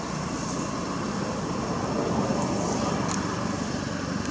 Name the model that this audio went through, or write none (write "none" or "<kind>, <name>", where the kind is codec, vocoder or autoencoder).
none